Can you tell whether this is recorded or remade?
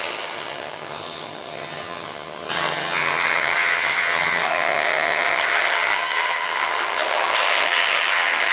remade